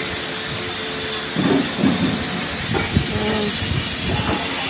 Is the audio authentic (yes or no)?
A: yes